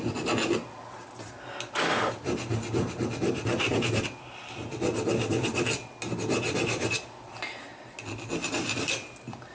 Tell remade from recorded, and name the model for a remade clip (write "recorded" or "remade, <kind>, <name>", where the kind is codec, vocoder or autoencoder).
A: recorded